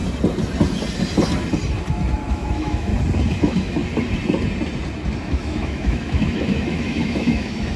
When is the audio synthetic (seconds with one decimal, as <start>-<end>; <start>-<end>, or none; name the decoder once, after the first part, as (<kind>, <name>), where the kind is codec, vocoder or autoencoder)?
2.3-2.9 (autoencoder, DAC-VAE); 3.4-3.8; 5.2-7.8